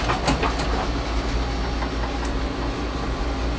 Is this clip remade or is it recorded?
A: recorded